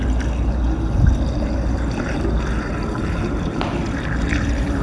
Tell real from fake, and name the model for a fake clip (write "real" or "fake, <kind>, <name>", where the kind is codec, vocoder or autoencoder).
real